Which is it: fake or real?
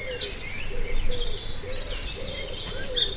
real